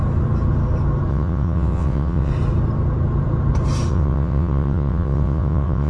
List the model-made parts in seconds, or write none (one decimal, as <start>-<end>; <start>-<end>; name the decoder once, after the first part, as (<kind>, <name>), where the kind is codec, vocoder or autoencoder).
1.1-2.3 (vocoder, WaveNeXt); 3.9-5.9